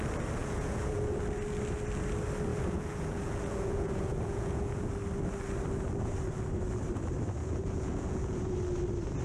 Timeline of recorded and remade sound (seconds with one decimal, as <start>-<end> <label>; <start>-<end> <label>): 0.0-0.4 recorded; 0.4-1.2 remade; 1.2-2.5 recorded; 2.5-4.9 remade; 4.9-7.4 recorded; 7.4-8.5 remade; 8.5-9.2 recorded